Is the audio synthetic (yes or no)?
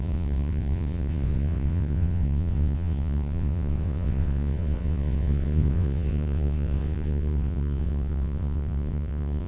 yes